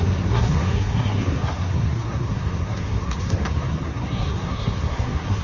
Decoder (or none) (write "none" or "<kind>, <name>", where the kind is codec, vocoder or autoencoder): codec, SNAC